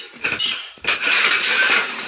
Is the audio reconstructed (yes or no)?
yes